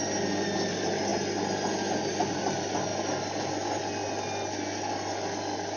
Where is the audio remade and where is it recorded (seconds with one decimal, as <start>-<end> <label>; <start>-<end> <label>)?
0.0-5.8 recorded